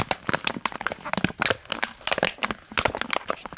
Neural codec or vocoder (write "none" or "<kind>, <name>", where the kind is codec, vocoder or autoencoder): none